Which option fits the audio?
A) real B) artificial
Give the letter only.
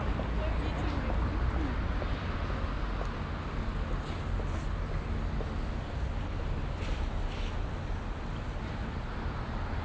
A